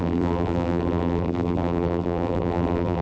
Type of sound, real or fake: fake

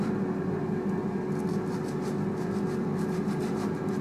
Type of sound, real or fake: real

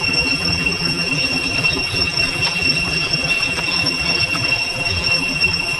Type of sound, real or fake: fake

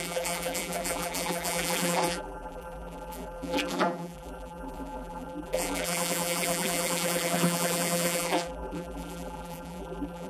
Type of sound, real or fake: fake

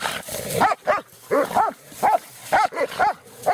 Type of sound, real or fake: real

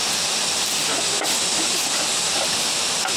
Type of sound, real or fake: real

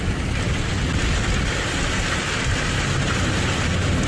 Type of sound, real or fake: real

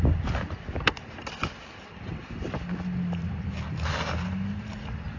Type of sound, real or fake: real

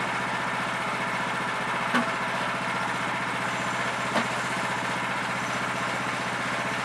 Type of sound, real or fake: real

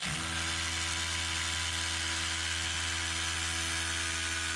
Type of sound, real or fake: real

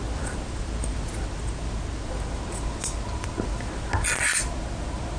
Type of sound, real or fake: real